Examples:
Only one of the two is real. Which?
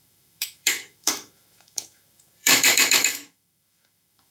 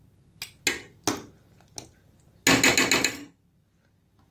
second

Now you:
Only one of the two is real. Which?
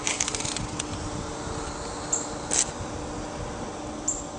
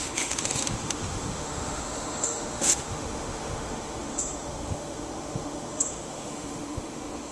first